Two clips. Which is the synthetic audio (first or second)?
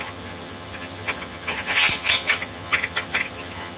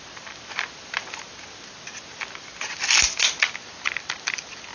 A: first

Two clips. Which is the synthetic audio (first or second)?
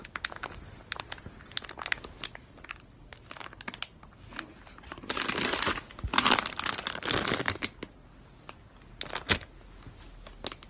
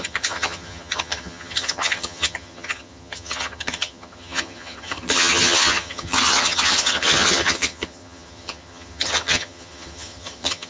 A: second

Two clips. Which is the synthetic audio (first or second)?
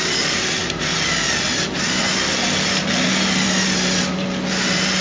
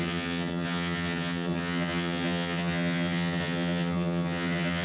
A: second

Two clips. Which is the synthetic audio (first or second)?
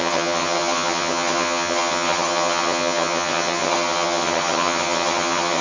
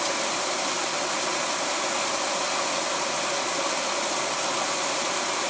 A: first